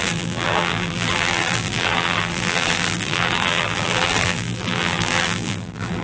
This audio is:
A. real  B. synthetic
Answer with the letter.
B